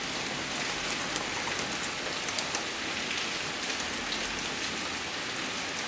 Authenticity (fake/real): real